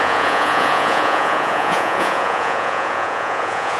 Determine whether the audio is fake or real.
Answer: fake